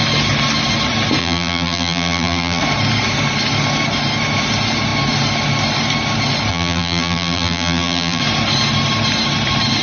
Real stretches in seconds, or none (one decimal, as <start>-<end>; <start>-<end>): 0.0-1.2; 2.6-6.5; 8.2-9.8